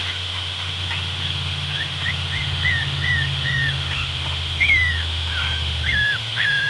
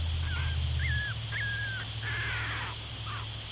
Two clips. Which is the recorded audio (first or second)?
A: second